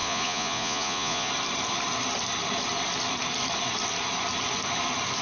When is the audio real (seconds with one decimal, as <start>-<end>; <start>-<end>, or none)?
1.3-5.2